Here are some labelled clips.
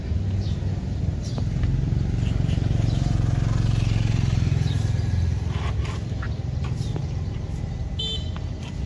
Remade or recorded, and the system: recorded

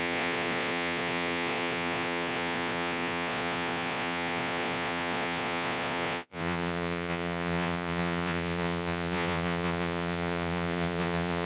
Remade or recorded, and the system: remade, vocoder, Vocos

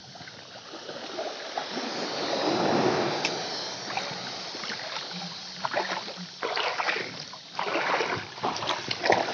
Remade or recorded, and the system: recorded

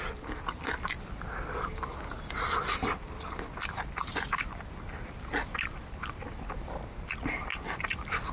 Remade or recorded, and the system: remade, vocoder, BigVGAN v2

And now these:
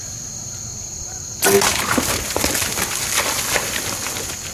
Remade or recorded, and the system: recorded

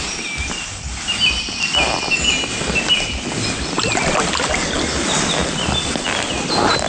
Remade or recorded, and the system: recorded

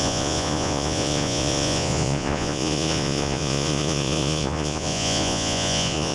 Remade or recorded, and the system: remade, vocoder, Vocos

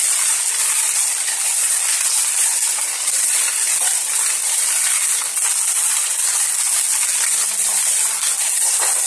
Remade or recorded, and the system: recorded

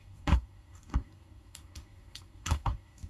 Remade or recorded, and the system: remade, codec, SNAC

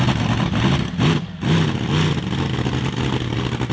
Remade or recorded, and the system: recorded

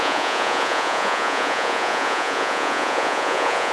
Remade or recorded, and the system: remade, vocoder, Vocos